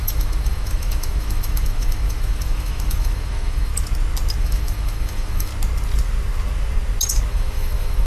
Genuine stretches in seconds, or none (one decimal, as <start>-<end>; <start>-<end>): 3.7-4.4; 5.5-7.3